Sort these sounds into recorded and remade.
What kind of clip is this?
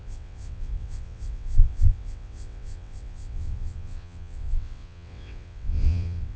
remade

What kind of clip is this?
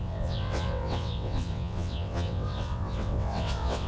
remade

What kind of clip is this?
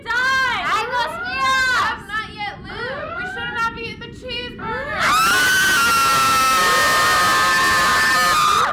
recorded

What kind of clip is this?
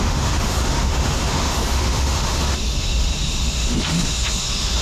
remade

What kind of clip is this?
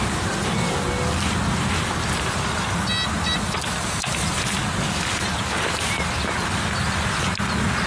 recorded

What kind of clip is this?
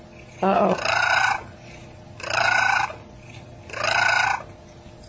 recorded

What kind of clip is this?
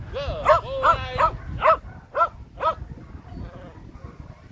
recorded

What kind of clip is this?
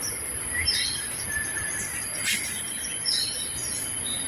recorded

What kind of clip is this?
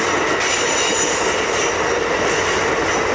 recorded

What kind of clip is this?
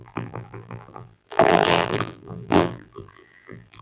remade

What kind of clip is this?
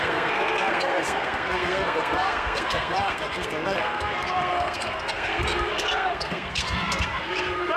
remade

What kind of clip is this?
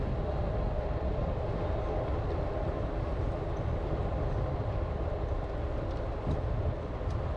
recorded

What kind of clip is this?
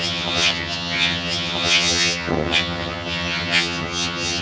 remade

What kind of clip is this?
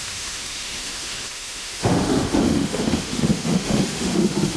remade